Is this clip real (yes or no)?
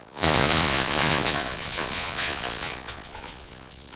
no